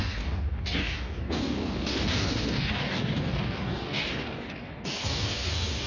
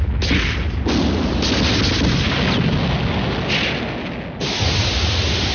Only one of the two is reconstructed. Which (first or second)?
first